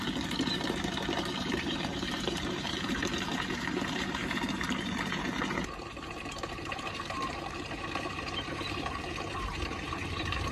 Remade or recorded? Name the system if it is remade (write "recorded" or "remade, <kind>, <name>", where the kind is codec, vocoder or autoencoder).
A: remade, vocoder, BigVGAN v2